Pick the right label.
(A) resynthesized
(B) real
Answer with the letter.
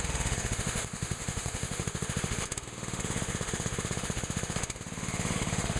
A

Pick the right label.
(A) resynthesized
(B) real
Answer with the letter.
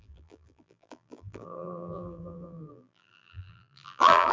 A